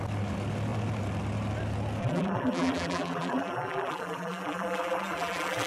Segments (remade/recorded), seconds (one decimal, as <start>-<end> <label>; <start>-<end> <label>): 0.0-2.0 recorded; 2.0-5.7 remade